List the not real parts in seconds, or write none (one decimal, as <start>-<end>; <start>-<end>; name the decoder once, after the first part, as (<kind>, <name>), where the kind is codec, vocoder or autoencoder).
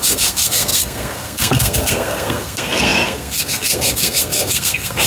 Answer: 0.0-5.1 (codec, SNAC)